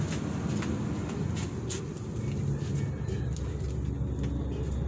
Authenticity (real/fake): real